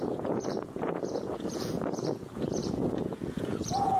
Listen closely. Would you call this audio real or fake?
fake